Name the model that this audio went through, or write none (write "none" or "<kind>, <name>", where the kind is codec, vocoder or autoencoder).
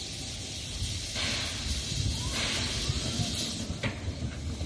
none